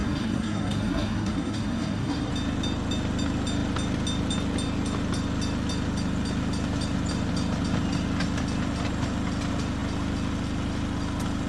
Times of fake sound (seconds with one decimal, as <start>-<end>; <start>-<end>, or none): 0.0-2.3